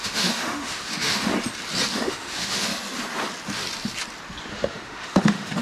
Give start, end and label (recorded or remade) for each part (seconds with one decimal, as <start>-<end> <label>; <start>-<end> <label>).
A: 0.0-1.3 remade; 1.3-1.9 recorded; 1.9-2.7 remade; 2.7-4.5 recorded; 4.5-5.6 remade